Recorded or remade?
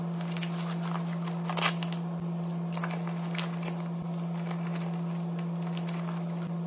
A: recorded